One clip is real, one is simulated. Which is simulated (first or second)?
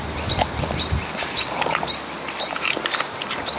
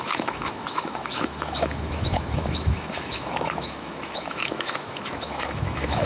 second